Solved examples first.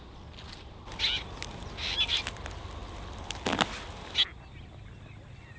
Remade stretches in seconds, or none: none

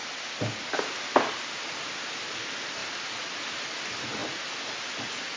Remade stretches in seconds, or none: none